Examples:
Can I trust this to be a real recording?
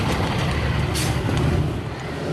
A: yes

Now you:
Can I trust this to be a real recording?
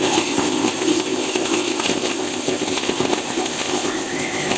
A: no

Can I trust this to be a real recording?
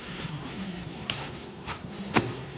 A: no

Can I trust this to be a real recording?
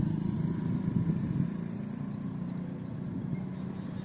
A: yes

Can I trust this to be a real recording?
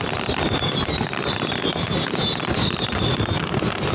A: no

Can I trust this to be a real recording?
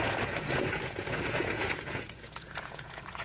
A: no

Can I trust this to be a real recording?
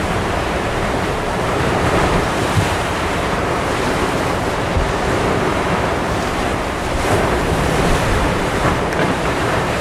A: no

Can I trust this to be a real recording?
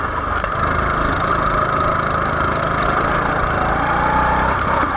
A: yes